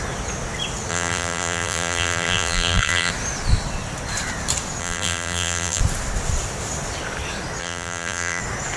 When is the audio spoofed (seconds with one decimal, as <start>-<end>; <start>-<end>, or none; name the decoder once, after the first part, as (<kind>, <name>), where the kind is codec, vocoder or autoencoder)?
0.9-3.1 (vocoder, BigVGAN v2); 4.8-5.8; 7.6-8.4